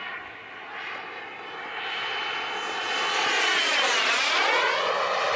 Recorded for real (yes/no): yes